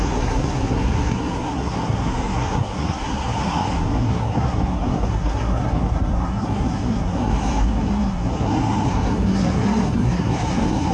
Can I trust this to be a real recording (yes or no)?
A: no